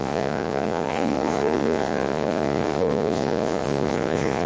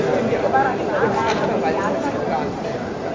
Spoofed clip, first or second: first